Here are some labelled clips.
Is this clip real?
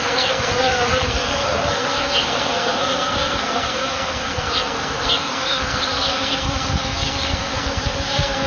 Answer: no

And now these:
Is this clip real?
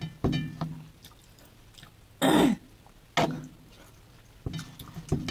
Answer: yes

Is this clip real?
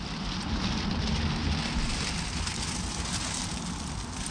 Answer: yes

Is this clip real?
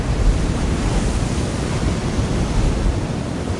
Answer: yes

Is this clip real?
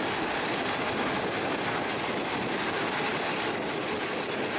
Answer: yes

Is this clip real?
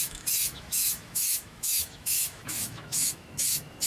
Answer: no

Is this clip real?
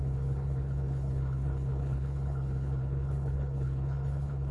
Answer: no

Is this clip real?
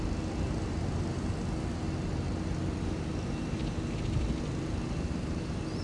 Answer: yes